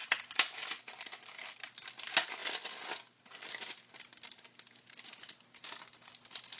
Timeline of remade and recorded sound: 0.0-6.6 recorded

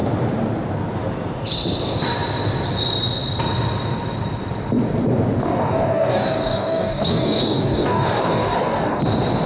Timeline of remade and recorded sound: 0.0-5.4 recorded; 5.4-9.0 remade; 9.0-9.5 recorded